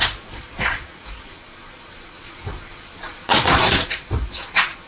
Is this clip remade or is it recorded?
remade